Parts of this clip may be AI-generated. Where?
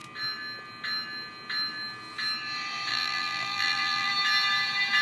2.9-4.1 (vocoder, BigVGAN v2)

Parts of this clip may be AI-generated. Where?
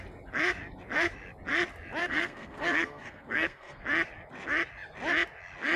2.0-3.8 (codec, SNAC)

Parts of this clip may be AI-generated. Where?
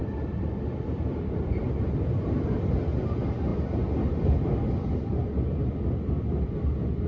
none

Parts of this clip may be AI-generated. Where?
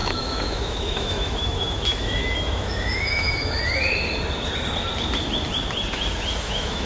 0.0-3.6 (autoencoder, DAC-VAE); 6.4-6.9